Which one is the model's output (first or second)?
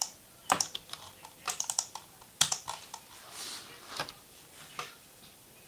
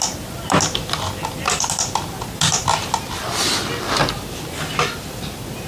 first